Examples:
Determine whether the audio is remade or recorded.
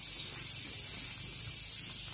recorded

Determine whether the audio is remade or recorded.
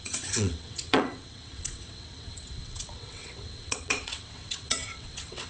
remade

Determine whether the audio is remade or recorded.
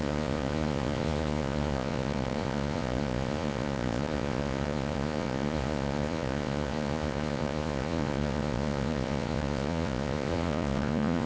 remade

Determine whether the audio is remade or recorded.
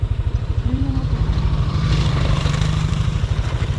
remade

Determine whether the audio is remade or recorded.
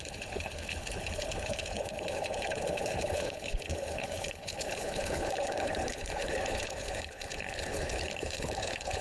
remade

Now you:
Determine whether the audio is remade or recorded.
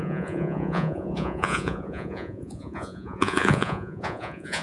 remade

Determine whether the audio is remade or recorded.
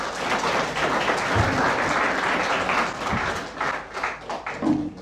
recorded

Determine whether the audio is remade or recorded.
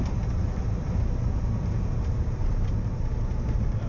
remade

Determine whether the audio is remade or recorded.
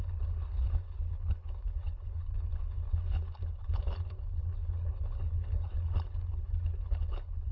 remade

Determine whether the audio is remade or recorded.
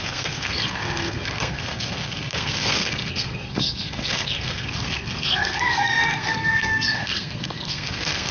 remade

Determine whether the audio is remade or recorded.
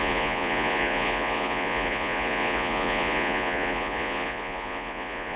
remade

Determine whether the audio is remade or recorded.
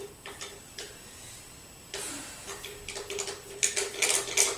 recorded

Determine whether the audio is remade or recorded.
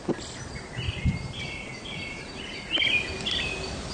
recorded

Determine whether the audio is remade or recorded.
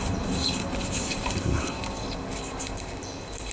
remade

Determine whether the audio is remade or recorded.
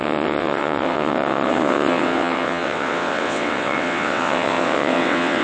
remade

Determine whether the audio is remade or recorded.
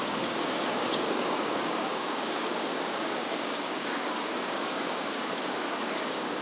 remade